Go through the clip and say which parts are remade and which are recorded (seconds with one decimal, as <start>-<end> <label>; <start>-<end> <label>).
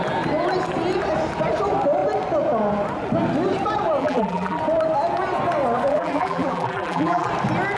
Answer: 0.0-4.0 recorded; 4.0-4.6 remade; 4.6-5.9 recorded; 5.9-7.3 remade; 7.3-7.8 recorded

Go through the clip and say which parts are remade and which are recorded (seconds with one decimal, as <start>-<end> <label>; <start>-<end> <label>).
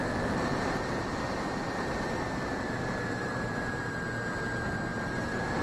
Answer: 0.0-0.5 recorded; 0.5-3.9 remade; 3.9-4.9 recorded; 4.9-5.6 remade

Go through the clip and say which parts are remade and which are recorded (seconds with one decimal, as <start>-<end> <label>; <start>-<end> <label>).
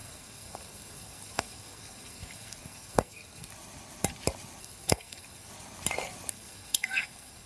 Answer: 0.0-3.5 remade; 3.5-4.6 recorded; 4.6-5.5 remade; 5.5-6.3 recorded; 6.3-7.5 remade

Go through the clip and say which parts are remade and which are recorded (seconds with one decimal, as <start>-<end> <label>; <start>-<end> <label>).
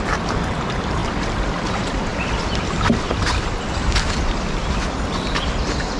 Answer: 0.0-6.0 recorded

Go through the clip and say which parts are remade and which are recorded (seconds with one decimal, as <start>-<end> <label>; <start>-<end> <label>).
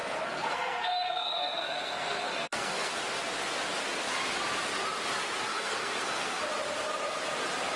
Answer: 0.0-2.9 remade; 2.9-5.5 recorded; 5.5-6.4 remade; 6.4-7.8 recorded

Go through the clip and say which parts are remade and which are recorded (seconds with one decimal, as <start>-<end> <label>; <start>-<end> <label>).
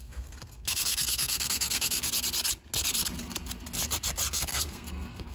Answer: 0.0-2.0 remade; 2.0-4.3 recorded; 4.3-5.3 remade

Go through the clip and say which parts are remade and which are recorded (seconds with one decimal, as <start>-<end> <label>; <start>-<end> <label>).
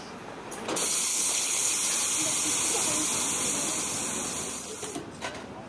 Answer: 0.0-1.1 recorded; 1.1-1.7 remade; 1.7-5.7 recorded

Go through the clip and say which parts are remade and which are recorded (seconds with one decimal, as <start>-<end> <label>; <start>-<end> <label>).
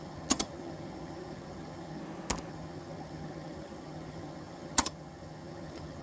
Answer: 0.0-2.0 remade; 2.0-2.5 recorded; 2.5-6.0 remade